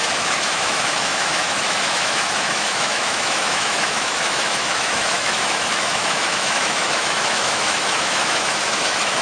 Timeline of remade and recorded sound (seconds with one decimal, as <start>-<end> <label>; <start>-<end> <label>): 0.0-9.2 remade